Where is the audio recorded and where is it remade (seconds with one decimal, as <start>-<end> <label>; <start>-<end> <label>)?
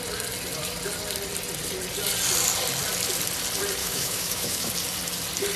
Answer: 0.0-3.8 recorded; 3.8-4.7 remade; 4.7-5.6 recorded